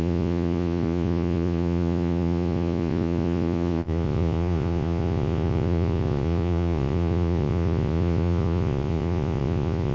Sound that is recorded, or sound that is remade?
remade